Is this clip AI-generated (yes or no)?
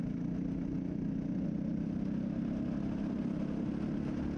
no